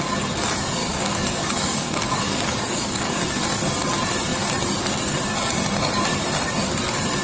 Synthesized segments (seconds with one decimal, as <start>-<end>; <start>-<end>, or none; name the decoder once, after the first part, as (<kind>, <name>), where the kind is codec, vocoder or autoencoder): 0.8-3.2 (codec, DAC)

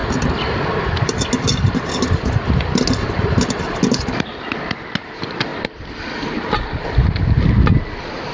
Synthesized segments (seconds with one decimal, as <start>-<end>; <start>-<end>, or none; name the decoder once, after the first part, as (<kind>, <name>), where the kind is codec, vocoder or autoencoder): none

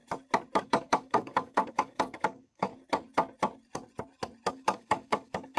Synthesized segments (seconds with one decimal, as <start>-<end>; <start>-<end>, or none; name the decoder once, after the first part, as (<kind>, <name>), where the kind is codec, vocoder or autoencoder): 0.6-2.7 (codec, DAC); 4.5-5.6

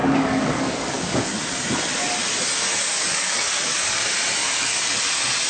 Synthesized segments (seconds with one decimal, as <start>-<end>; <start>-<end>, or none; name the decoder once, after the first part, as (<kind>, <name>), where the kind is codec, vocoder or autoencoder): 0.0-1.3 (codec, DAC); 2.9-4.0; 4.4-5.0

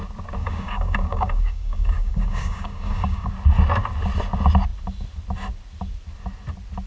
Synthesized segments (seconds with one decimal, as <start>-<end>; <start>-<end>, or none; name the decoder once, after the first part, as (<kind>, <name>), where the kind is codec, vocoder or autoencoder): 0.4-3.3 (codec, DAC)

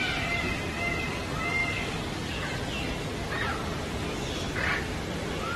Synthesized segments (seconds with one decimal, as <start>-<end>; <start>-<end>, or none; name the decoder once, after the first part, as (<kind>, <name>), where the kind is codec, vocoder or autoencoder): 1.6-2.5 (codec, DAC)

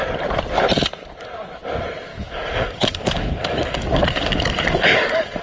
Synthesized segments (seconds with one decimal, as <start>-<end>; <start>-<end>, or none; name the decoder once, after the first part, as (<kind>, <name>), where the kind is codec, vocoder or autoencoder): 2.1-5.4 (codec, DAC)

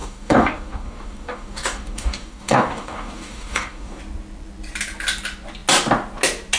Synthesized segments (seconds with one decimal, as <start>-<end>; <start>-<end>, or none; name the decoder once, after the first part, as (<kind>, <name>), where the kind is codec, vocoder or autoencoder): 0.0-4.0 (codec, DAC)